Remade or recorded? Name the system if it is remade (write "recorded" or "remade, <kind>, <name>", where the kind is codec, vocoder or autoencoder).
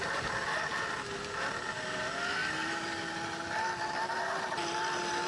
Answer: recorded